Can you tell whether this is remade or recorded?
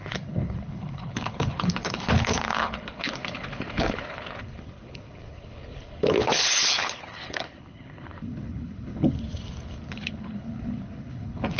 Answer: remade